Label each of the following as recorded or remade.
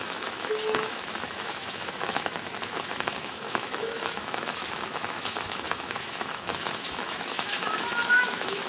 remade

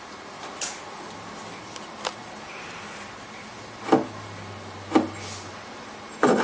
recorded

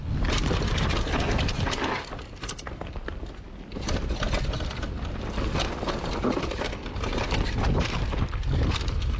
recorded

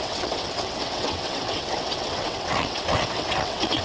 remade